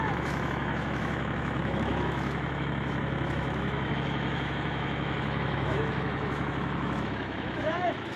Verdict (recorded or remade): remade